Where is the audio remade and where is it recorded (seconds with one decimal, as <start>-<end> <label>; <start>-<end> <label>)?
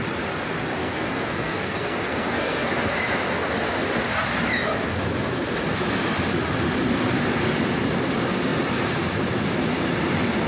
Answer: 0.0-0.8 recorded; 0.8-2.7 remade; 2.7-10.5 recorded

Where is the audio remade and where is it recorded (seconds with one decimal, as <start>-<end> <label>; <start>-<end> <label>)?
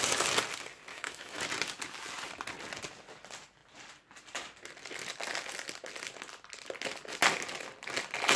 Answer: 0.0-0.9 recorded; 0.9-1.4 remade; 1.4-8.4 recorded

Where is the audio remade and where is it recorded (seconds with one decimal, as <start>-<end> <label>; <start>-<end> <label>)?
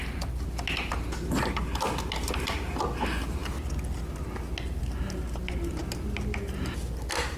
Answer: 0.0-7.4 recorded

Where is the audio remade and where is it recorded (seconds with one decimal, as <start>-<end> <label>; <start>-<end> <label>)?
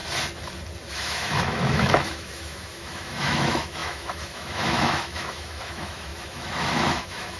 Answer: 0.0-0.9 recorded; 0.9-7.4 remade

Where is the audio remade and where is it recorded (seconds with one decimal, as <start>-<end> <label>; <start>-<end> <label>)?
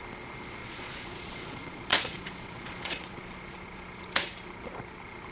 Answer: 0.0-0.6 recorded; 0.6-3.8 remade; 3.8-5.3 recorded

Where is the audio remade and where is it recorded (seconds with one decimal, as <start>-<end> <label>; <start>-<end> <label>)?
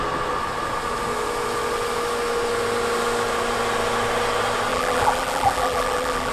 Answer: 0.0-4.7 recorded; 4.7-6.3 remade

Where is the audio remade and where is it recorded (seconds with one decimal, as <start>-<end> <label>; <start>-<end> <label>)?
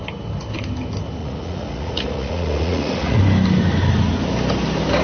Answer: 0.0-1.2 recorded; 1.2-3.2 remade; 3.2-5.0 recorded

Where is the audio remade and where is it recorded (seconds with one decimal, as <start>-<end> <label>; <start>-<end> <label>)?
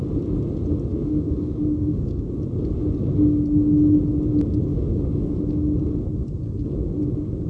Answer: 0.0-0.9 recorded; 0.9-2.3 remade; 2.3-4.7 recorded; 4.7-5.4 remade; 5.4-7.5 recorded